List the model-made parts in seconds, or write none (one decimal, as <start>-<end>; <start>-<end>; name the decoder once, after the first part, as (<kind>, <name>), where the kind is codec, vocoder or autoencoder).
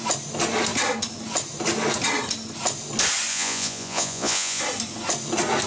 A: 3.3-4.6 (vocoder, Vocos)